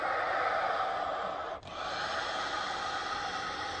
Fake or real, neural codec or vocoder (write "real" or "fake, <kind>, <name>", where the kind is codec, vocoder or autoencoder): real